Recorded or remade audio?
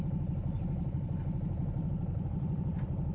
recorded